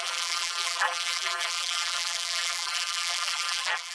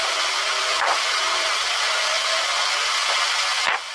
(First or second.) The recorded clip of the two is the second